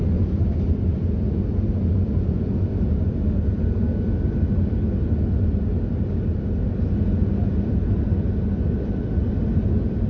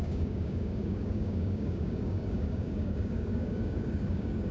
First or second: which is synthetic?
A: second